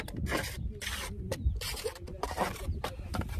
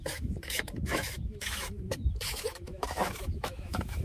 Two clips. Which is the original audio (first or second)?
first